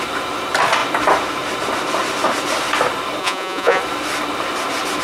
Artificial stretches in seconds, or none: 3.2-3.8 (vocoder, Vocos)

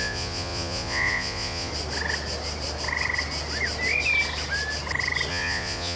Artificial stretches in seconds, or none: 0.0-1.7 (vocoder, Vocos); 5.3-6.0

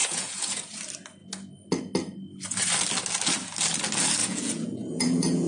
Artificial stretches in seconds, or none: 0.0-0.7 (vocoder, Vocos); 4.2-5.5

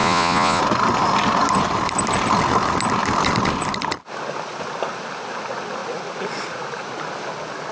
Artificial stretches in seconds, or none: 0.0-0.6 (vocoder, Vocos)